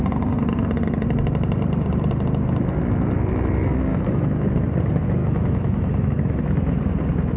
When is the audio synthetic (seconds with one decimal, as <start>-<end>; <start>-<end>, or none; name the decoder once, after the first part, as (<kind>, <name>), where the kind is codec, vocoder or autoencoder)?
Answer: 3.9-4.5 (autoencoder, DAC-VAE); 5.2-6.4